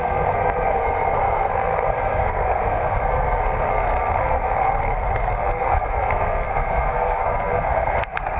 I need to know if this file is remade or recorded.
remade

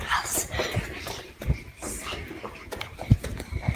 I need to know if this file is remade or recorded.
remade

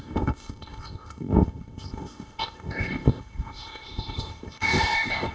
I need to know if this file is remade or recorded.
remade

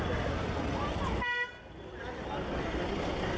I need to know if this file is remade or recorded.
recorded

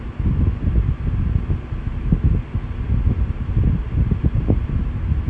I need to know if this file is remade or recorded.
recorded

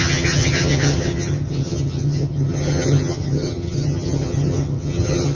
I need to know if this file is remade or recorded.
remade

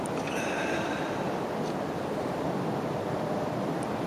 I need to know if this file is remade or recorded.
remade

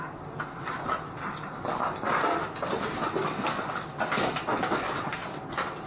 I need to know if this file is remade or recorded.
recorded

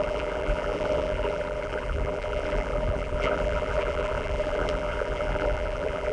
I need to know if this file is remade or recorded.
remade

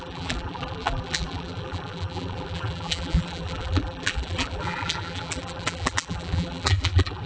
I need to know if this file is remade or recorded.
remade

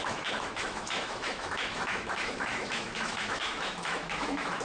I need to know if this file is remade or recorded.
remade